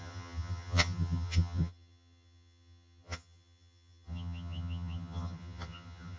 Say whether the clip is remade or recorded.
remade